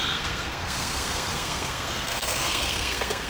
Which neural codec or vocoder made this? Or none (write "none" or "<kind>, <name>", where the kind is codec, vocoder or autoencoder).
codec, SNAC